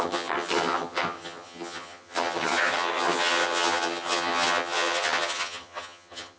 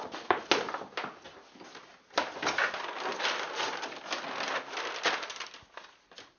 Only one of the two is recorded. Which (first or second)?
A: second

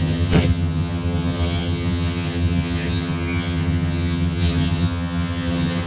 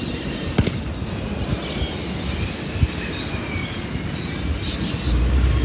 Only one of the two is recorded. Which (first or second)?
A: second